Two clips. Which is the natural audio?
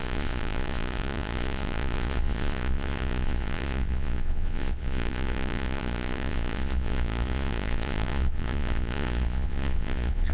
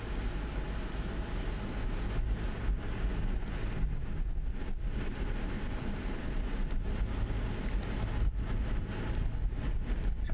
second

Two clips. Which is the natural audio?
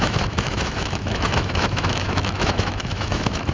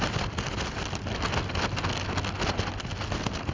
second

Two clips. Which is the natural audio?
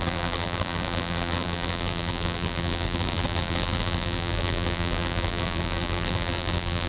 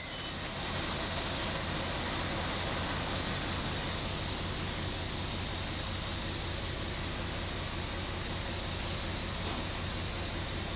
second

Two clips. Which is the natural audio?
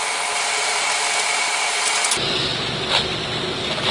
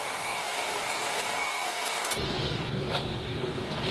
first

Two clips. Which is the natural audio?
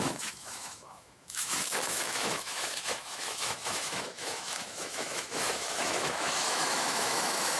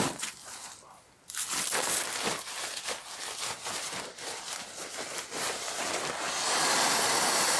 second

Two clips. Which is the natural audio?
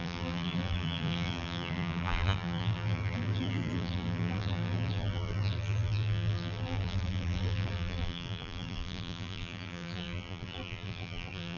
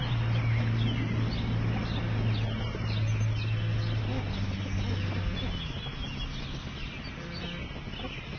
second